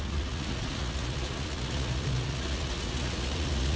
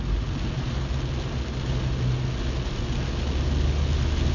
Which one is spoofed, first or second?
first